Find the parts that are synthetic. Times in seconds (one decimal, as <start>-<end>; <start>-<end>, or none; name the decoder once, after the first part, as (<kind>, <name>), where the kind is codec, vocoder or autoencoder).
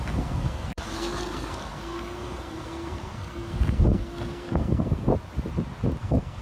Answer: 0.0-5.1 (codec, SNAC); 6.0-6.4